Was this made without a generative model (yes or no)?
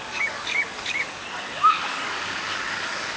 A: no